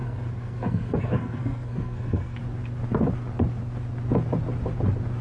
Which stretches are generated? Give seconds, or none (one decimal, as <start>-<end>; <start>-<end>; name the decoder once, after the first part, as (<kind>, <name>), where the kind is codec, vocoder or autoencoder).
0.0-2.4 (codec, SNAC)